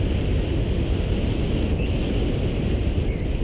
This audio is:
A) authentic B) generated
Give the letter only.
A